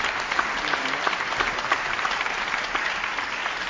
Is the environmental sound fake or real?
real